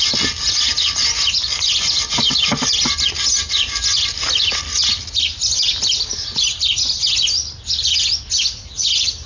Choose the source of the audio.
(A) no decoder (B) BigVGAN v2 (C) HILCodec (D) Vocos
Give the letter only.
A